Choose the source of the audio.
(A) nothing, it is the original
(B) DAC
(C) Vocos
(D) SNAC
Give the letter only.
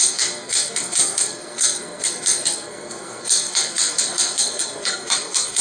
D